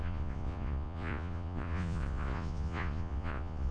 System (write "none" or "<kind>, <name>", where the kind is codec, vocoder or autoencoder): vocoder, Vocos